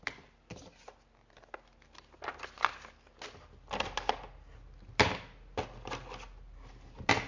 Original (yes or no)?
yes